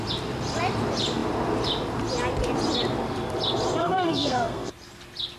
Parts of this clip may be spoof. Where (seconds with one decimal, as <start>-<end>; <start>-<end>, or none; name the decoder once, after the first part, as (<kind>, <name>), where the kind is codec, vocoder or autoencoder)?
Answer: 3.8-4.7 (codec, SNAC)